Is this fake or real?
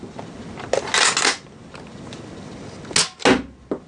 real